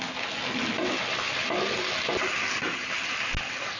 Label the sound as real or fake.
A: real